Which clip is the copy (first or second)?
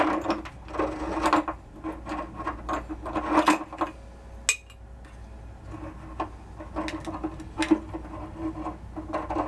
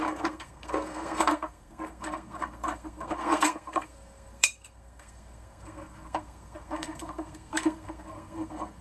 second